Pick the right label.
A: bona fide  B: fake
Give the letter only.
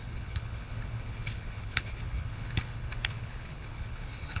B